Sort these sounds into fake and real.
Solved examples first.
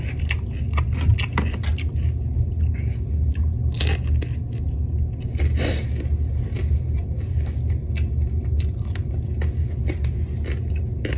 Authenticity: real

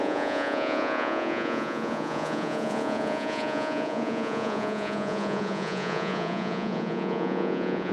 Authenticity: fake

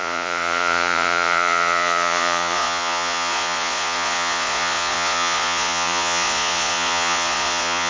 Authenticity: fake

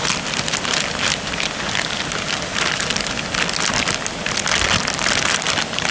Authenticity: fake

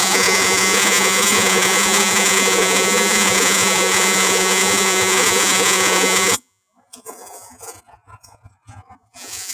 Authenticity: fake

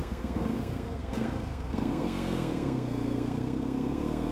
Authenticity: fake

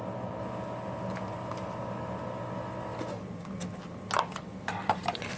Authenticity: real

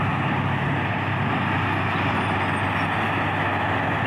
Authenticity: real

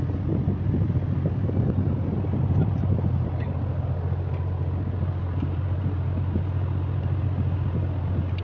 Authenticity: real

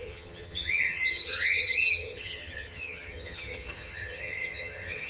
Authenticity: fake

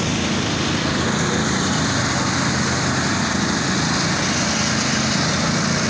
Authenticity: real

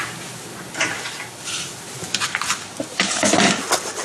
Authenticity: real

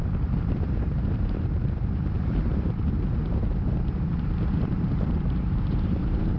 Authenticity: fake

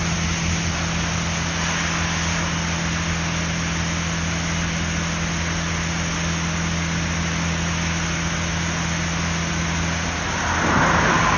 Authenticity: real